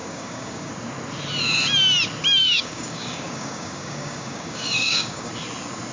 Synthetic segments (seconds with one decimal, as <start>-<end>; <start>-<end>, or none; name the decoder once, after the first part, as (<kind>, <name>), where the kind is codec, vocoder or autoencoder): 0.0-0.7 (codec, DAC); 2.4-5.3